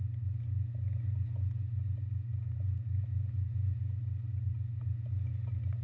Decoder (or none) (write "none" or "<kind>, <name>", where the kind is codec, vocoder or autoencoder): none